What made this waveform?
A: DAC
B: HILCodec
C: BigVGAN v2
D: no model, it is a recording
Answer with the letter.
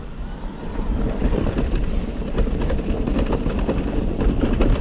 D